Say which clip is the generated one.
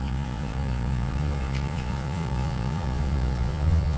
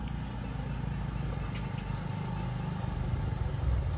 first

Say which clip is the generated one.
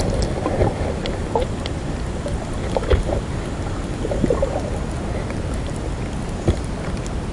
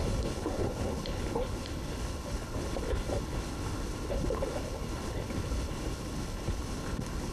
second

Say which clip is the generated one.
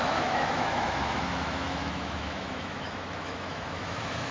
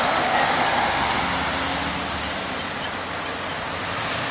first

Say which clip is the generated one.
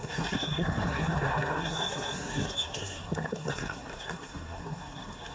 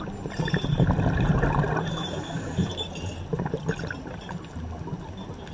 first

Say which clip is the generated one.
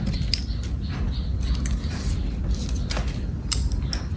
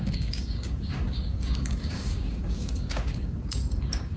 second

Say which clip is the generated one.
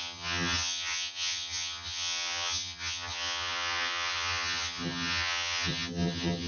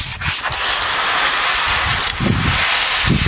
first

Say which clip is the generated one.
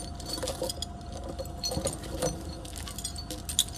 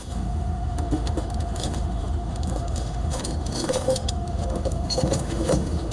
second